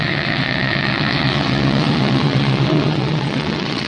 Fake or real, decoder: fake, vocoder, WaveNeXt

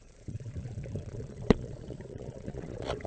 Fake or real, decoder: fake, vocoder, Vocos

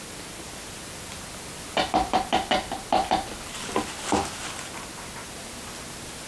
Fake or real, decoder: real